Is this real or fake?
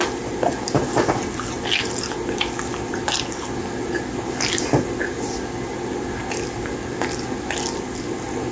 real